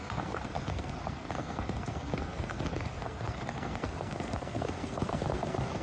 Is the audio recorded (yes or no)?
no